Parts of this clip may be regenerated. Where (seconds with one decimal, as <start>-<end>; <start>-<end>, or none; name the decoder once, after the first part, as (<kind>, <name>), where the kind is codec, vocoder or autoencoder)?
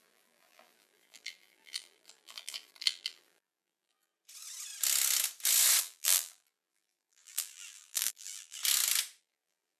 0.0-4.1 (vocoder, BigVGAN v2); 5.8-8.6; 9.2-9.8